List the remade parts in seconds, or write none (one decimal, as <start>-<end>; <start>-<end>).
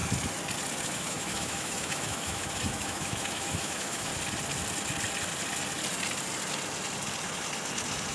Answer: 0.8-4.1